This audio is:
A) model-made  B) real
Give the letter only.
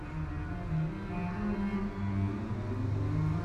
B